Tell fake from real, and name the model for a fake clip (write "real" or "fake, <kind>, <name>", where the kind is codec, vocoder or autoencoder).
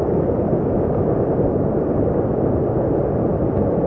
real